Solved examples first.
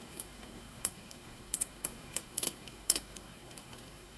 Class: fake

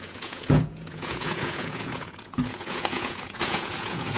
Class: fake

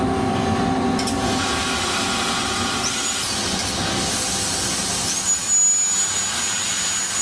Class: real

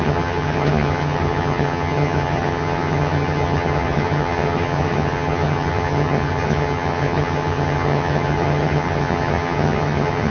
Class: fake